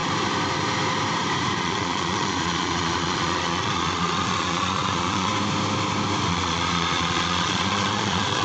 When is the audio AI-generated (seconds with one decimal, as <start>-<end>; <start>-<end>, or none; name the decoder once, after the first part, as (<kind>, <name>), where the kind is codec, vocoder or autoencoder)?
1.6-5.3 (vocoder, Vocos); 6.3-8.4